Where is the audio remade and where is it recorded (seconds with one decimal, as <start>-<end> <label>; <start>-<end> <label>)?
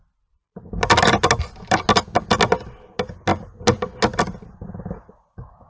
0.0-5.7 recorded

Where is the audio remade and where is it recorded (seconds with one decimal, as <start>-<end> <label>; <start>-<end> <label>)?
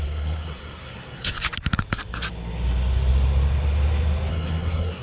0.0-1.3 remade; 1.3-4.3 recorded; 4.3-5.0 remade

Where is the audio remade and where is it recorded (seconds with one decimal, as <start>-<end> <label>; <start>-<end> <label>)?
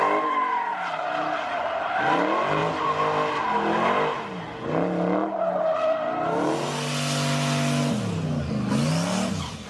0.0-0.7 recorded; 0.7-1.9 remade; 1.9-9.7 recorded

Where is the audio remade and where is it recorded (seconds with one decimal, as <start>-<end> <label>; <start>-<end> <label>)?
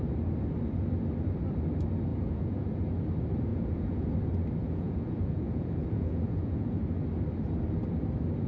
0.0-2.1 recorded; 2.1-2.8 remade; 2.8-3.5 recorded; 3.5-4.1 remade; 4.1-4.6 recorded; 4.6-6.8 remade; 6.8-8.5 recorded